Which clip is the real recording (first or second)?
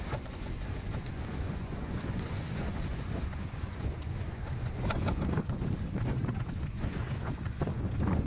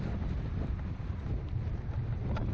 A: second